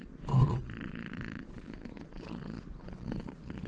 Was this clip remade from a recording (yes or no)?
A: yes